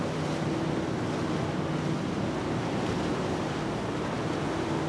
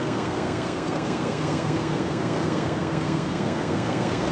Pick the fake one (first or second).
second